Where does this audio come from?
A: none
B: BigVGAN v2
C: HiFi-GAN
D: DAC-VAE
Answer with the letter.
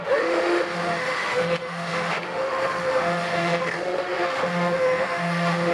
D